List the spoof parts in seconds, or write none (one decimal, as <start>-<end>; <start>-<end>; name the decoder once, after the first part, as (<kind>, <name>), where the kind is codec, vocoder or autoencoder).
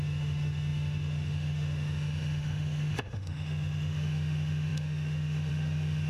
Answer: 0.0-6.1 (autoencoder, DAC-VAE)